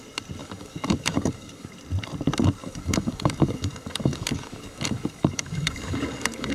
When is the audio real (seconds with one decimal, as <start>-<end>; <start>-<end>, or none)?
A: 0.0-0.4; 1.7-2.6